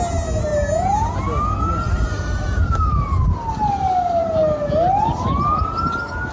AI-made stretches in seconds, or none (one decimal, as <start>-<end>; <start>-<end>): none